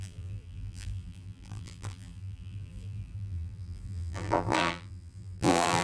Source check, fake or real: fake